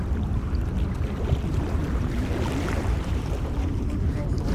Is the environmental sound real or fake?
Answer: fake